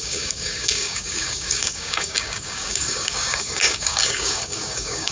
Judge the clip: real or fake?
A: fake